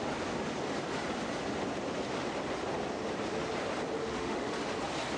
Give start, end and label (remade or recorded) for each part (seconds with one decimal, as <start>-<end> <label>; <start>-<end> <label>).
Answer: 0.0-4.0 recorded; 4.0-4.5 remade; 4.5-5.2 recorded